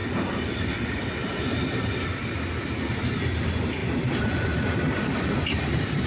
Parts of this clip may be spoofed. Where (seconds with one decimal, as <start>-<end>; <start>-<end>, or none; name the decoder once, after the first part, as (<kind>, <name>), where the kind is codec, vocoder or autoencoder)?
3.8-6.1 (vocoder, BigVGAN v2)